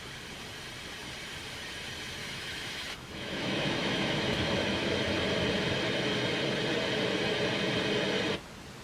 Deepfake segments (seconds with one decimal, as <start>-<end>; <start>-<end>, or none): 2.2-5.0